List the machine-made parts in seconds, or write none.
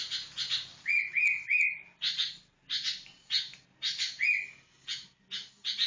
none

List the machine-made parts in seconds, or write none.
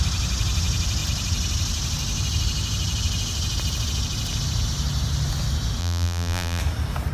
5.8-6.6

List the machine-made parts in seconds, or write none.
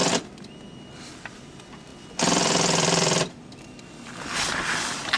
1.0-5.2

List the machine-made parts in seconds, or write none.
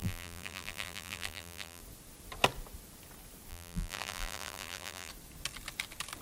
0.0-1.8; 3.5-5.1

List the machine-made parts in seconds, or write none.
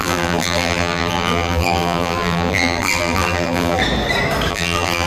0.0-3.8; 4.5-5.1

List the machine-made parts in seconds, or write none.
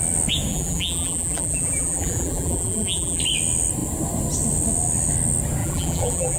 0.5-3.2; 5.6-6.4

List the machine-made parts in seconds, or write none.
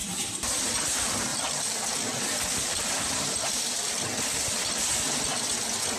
1.3-4.8